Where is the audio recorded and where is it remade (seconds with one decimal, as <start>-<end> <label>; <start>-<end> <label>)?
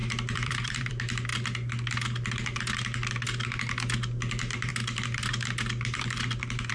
0.0-0.9 remade; 0.9-6.7 recorded